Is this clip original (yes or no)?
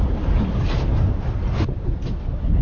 yes